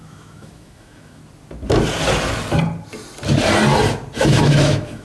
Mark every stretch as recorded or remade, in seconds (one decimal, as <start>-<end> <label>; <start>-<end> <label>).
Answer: 0.0-1.2 remade; 1.2-4.2 recorded; 4.2-5.0 remade